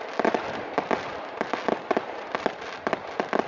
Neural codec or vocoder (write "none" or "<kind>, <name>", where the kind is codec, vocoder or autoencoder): none